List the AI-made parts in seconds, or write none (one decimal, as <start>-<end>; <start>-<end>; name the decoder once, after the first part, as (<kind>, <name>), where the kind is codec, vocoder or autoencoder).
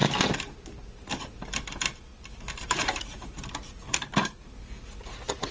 1.0-5.5 (vocoder, BigVGAN v2)